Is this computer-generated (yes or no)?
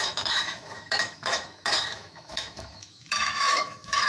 yes